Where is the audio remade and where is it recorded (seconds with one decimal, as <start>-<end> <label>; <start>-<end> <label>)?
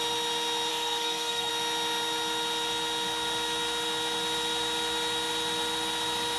0.0-0.7 recorded; 0.7-1.5 remade; 1.5-6.4 recorded